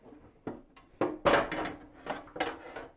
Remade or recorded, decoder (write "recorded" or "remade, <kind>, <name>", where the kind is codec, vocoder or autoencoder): recorded